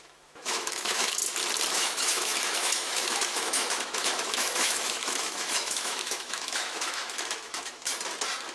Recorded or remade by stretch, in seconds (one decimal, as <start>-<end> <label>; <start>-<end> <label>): 0.0-1.2 remade; 1.2-1.7 recorded; 1.7-7.9 remade; 7.9-8.5 recorded